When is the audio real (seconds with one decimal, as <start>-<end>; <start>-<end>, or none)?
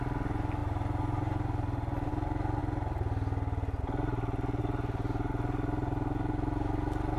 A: 0.0-0.6; 2.1-4.6; 5.3-7.2